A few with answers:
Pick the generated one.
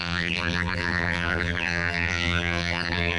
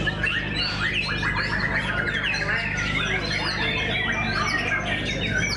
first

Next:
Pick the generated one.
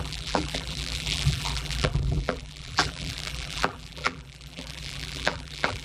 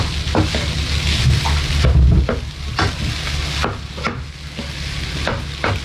first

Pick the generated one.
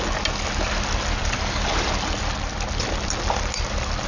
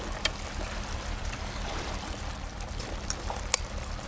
second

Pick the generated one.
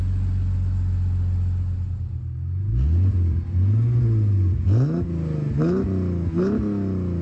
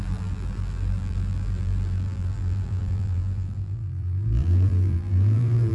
second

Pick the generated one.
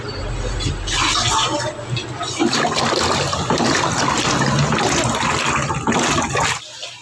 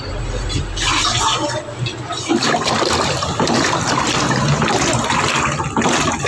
second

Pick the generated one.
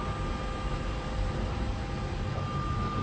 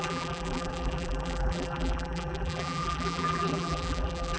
second